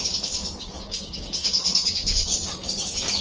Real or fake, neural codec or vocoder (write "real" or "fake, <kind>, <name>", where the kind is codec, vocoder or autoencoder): fake, codec, DAC